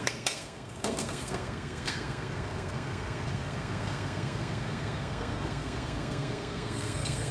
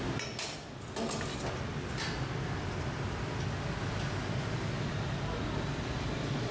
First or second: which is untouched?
second